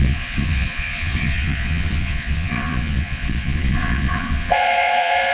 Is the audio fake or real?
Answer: fake